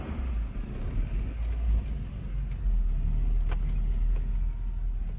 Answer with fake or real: real